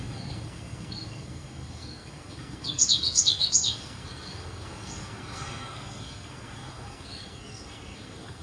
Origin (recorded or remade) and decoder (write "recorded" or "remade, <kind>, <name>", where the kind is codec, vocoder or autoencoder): remade, codec, SNAC